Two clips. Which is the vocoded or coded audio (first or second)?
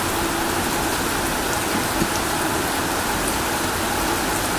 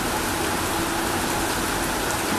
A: first